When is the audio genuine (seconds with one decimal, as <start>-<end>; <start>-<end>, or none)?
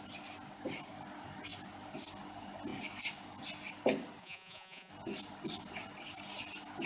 0.0-4.2; 4.9-6.9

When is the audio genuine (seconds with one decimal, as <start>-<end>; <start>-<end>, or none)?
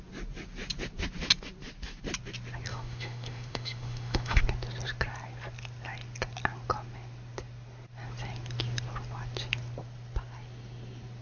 0.0-2.7; 4.4-11.2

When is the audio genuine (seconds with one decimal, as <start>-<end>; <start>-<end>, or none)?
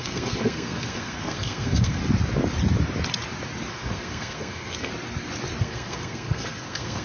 2.0-3.7; 4.9-5.6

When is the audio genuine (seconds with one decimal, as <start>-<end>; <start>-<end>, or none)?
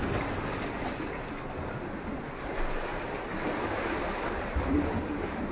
0.0-2.9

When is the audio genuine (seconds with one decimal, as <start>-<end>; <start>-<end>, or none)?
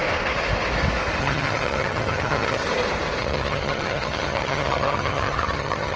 0.0-1.2; 2.6-3.2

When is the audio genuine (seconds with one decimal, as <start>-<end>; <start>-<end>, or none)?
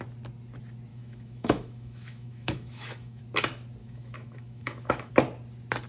0.0-0.9; 3.2-3.8; 5.1-5.9